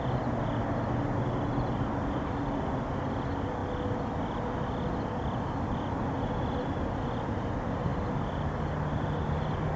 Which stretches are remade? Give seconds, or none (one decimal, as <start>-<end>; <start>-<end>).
none